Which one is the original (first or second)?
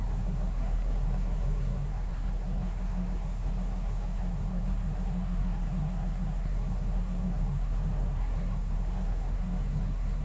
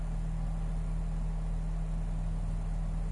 second